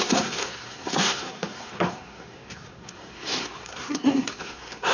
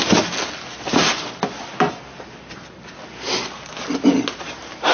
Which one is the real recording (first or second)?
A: second